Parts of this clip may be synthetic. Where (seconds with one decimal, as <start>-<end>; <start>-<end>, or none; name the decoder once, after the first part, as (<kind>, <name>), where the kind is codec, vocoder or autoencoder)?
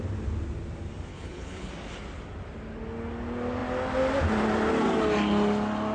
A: 1.1-1.7 (codec, HILCodec)